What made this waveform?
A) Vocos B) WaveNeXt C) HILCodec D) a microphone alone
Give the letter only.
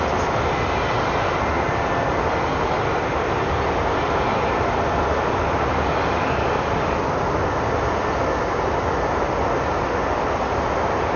D